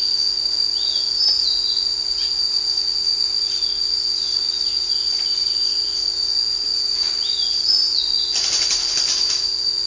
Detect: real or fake real